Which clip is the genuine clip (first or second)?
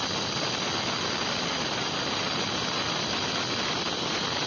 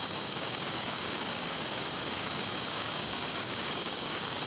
first